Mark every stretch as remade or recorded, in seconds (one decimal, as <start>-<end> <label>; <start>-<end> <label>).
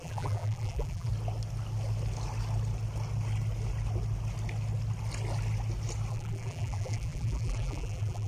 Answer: 0.0-1.1 remade; 1.1-6.1 recorded; 6.1-8.3 remade